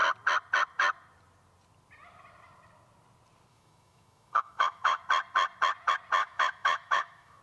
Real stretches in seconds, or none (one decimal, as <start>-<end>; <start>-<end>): 0.0-3.5; 5.0-6.2